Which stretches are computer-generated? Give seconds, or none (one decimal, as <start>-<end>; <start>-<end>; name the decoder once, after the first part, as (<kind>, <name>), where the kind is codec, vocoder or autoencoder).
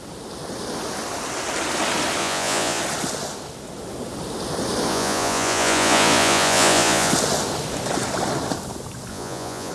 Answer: 2.2-2.8 (vocoder, Vocos); 4.9-7.1; 9.1-9.7